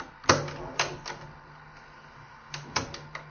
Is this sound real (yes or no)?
yes